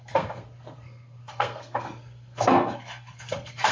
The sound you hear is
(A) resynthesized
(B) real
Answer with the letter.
A